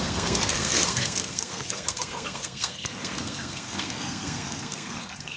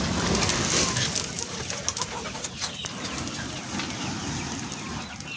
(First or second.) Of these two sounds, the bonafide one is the second